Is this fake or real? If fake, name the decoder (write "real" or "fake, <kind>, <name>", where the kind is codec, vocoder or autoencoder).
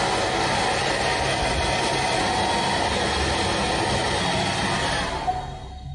real